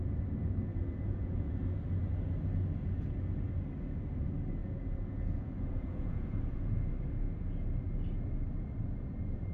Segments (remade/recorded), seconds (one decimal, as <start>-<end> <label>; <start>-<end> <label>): 0.0-0.7 recorded; 0.7-1.5 remade; 1.5-4.6 recorded; 4.6-6.9 remade; 6.9-9.5 recorded

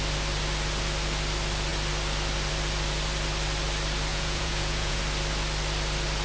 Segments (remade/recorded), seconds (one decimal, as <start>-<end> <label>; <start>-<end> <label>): 0.0-4.1 recorded; 4.1-5.0 remade; 5.0-6.2 recorded

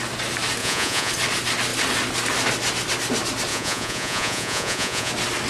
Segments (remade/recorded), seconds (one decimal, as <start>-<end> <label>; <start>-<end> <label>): 0.0-0.6 recorded; 0.6-1.1 remade; 1.1-3.5 recorded; 3.5-5.1 remade; 5.1-5.5 recorded

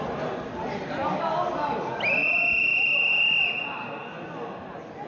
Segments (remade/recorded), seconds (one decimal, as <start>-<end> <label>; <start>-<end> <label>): 0.0-1.0 recorded; 1.0-2.0 remade; 2.0-5.1 recorded

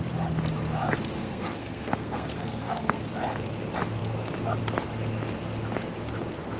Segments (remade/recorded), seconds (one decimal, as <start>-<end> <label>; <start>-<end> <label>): 0.0-1.2 recorded; 1.2-3.0 remade; 3.0-6.6 recorded

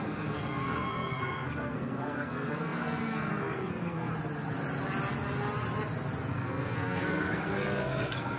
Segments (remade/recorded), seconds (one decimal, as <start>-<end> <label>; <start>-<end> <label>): 0.0-4.1 remade; 4.1-6.3 recorded; 6.3-8.4 remade

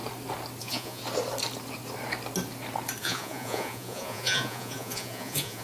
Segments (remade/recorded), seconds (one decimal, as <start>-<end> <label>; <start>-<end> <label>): 0.0-0.6 recorded; 0.6-1.0 remade; 1.0-3.0 recorded; 3.0-5.6 remade